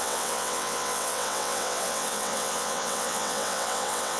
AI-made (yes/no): yes